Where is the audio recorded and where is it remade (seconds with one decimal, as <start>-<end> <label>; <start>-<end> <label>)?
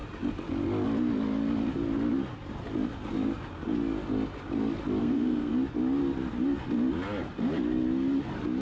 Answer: 0.0-5.0 recorded; 5.0-5.5 remade; 5.5-8.6 recorded